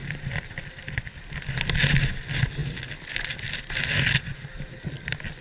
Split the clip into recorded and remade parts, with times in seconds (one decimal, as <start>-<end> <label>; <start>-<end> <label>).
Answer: 0.0-5.4 recorded